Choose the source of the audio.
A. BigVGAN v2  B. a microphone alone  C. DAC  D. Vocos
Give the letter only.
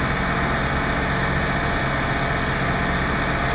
B